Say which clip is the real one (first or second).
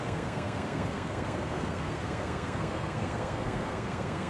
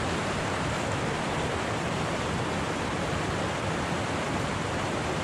second